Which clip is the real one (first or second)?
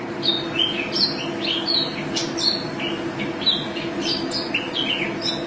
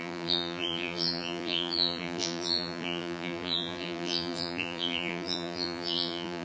first